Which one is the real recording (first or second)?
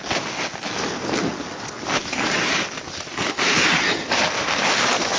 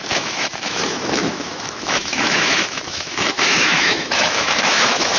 first